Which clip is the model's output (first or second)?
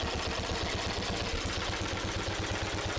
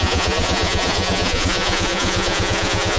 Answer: second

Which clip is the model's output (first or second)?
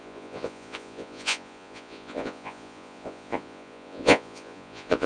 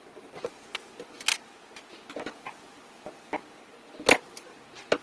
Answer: first